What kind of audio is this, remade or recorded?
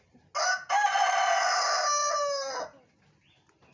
recorded